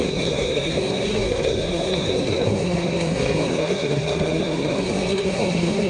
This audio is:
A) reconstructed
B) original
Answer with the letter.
A